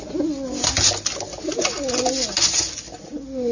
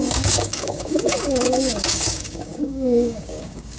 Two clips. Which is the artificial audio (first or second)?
second